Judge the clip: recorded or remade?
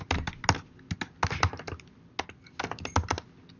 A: recorded